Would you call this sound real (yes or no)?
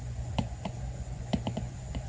no